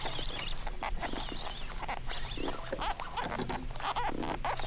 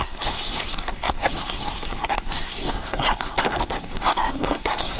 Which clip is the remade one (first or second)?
second